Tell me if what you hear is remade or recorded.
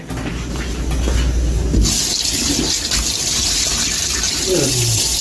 recorded